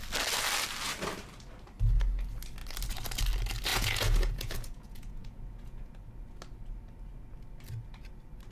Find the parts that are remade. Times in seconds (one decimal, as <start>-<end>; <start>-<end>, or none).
3.7-5.9

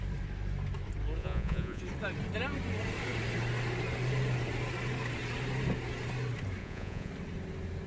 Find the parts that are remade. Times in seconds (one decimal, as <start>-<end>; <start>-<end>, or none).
1.2-1.8; 6.6-7.1

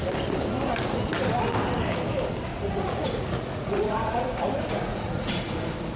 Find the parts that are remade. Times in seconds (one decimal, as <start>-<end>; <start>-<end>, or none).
2.5-5.4

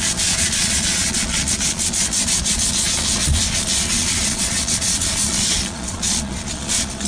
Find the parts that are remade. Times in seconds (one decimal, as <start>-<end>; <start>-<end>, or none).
0.0-7.1

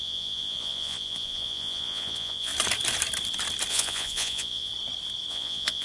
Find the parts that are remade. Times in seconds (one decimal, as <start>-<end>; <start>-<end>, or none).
0.0-2.5; 3.7-4.7; 5.3-5.8

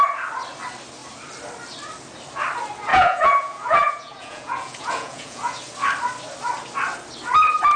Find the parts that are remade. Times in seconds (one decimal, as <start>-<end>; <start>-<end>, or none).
2.9-5.6

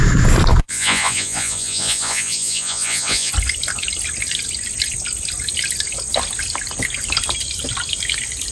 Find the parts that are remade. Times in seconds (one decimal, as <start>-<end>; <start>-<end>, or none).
0.6-3.3

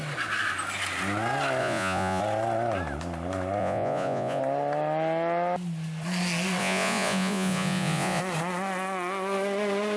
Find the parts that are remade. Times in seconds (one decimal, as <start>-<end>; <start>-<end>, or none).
1.6-2.2; 3.6-4.4; 6.6-8.2